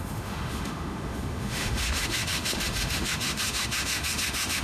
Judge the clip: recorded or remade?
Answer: remade